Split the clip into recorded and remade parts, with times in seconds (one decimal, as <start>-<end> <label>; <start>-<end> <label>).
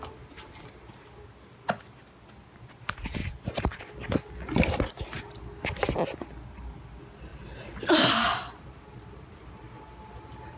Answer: 0.0-3.2 recorded; 3.2-3.8 remade; 3.8-10.6 recorded